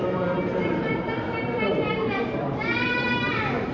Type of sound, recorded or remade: remade